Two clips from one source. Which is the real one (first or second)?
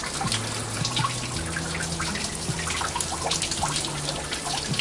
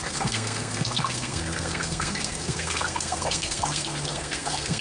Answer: first